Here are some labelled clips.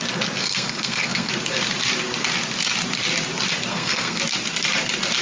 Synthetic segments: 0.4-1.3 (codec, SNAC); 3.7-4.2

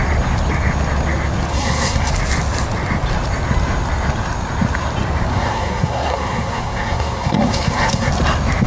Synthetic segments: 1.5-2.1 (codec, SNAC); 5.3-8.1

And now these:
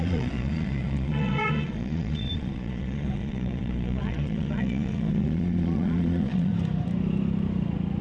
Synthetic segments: 0.0-6.5 (vocoder, Vocos)

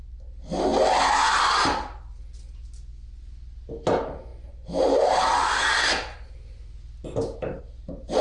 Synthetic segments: none